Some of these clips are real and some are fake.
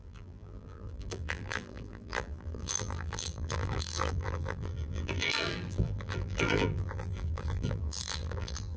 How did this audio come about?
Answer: fake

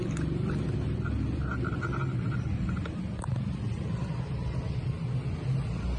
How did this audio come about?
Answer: fake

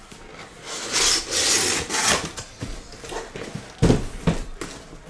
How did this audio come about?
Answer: real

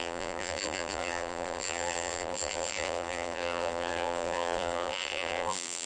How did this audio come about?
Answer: fake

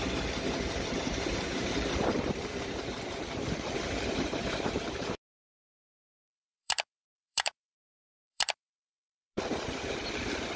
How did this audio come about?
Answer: fake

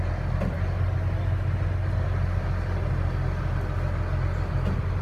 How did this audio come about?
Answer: real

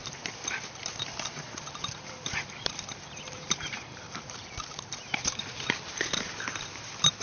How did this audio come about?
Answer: fake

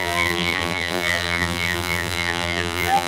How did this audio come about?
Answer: fake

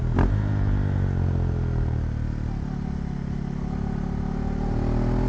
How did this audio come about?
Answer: real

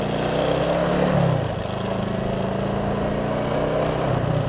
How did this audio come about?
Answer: real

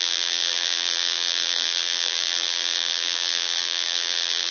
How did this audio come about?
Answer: fake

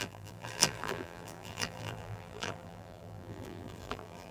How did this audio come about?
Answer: fake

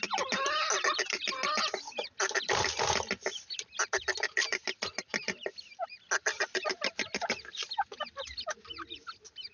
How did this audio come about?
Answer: real